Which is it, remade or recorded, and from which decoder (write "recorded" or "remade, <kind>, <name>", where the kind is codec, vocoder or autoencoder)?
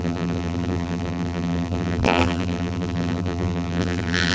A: remade, vocoder, BigVGAN v2